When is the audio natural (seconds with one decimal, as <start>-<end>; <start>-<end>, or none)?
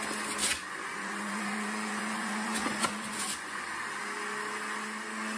0.0-0.5; 3.7-5.4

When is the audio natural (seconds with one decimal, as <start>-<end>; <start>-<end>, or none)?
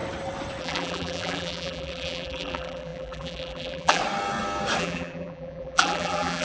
0.0-0.6; 4.0-4.8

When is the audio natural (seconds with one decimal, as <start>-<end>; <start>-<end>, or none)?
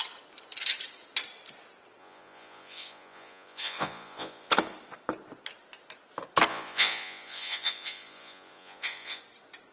0.0-2.0; 4.5-6.5; 9.2-9.7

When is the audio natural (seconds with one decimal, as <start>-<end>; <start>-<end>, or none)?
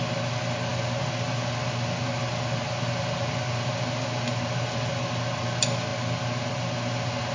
0.0-7.3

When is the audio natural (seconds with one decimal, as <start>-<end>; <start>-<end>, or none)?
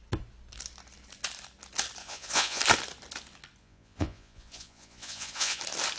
0.0-2.0; 2.6-3.6; 5.6-6.0